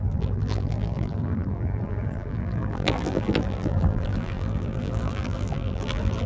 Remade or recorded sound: remade